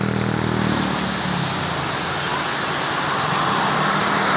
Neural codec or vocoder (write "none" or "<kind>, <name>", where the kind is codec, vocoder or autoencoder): none